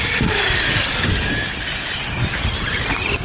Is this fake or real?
real